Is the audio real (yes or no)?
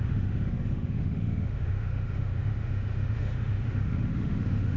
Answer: no